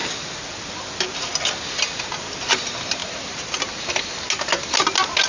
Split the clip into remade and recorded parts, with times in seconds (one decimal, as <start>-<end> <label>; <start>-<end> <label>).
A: 0.0-5.3 recorded